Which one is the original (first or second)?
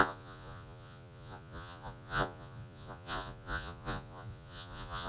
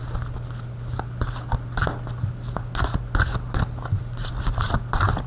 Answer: second